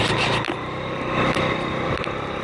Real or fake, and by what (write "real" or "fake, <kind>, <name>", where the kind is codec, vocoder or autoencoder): real